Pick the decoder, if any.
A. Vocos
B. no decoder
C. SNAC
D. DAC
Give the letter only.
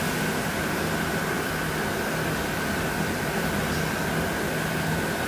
B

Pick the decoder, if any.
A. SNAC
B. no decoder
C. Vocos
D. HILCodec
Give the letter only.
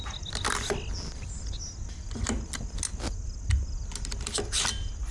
B